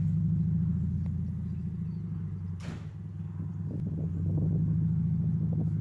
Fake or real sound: real